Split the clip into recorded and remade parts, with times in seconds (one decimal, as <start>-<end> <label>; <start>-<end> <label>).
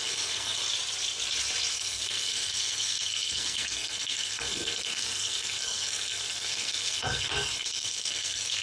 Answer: 0.0-0.6 remade; 0.6-1.7 recorded; 1.7-8.6 remade